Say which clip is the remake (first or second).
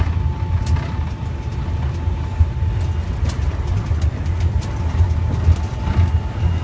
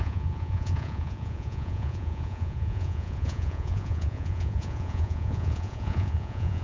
second